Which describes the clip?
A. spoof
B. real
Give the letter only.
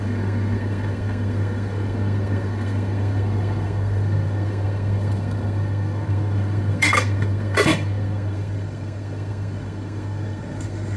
A